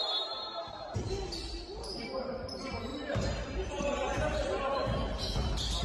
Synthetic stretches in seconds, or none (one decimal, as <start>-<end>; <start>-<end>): 0.0-2.1; 2.9-3.7